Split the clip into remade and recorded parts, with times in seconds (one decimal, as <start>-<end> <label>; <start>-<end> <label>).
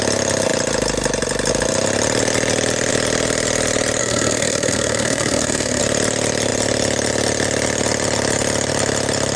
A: 0.0-4.0 recorded; 4.0-5.8 remade; 5.8-9.4 recorded